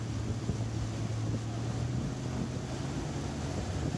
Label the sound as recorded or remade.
recorded